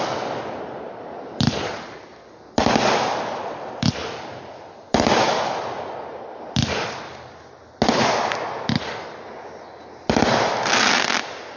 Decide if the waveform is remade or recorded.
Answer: recorded